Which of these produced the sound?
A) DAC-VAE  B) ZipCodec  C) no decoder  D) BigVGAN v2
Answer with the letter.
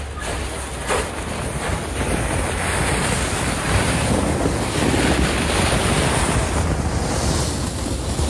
C